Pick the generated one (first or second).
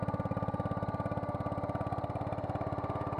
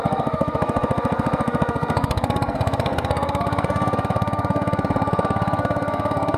second